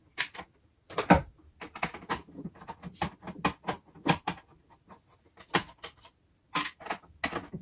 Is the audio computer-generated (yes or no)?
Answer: no